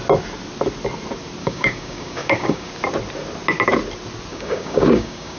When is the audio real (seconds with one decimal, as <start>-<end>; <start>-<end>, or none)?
0.0-1.4; 2.7-4.3